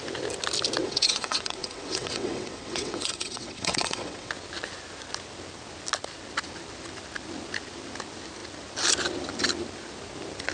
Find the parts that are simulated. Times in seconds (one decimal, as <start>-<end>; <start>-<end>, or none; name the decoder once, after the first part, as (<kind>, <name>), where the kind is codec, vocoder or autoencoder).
0.8-4.3 (vocoder, WaveNeXt)